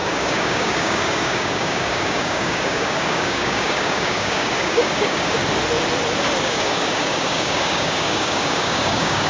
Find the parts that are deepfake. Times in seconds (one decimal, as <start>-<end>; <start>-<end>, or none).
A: 0.0-5.4; 6.4-9.3